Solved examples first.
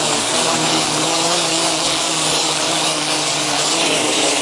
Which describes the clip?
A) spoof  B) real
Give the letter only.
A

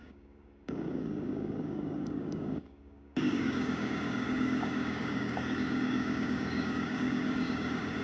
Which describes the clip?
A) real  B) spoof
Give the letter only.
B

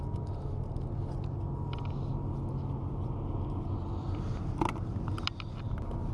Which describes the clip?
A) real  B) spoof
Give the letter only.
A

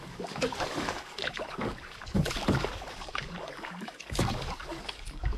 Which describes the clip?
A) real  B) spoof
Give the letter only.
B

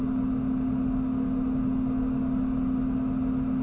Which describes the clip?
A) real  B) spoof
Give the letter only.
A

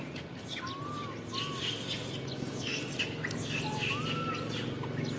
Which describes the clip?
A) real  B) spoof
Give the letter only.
A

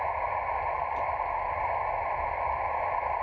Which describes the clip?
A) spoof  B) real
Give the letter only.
B